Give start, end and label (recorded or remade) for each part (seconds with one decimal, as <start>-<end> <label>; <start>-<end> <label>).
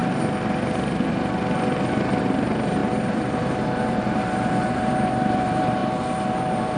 0.0-2.0 recorded; 2.0-6.8 remade